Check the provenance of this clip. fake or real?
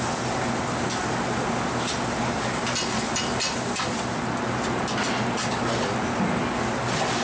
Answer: real